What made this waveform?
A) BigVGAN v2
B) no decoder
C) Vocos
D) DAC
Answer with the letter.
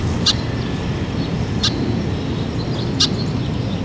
B